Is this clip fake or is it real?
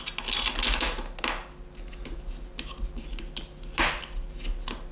real